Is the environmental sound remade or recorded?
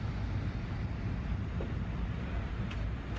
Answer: recorded